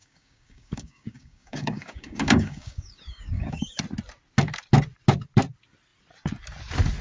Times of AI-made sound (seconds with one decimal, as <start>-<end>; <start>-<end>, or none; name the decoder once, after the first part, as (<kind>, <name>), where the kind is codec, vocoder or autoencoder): 0.0-3.8 (codec, DAC)